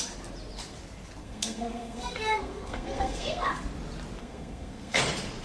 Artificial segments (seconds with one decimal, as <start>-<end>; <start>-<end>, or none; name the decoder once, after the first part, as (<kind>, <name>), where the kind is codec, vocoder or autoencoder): 1.2-3.5 (codec, SNAC); 4.2-5.0